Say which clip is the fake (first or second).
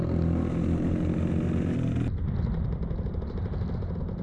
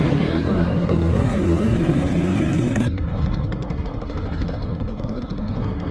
second